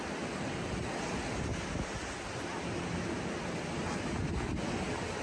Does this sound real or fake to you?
real